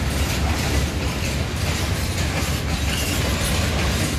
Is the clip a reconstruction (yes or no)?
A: no